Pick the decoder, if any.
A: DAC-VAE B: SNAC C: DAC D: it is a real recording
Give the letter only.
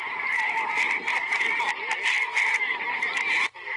D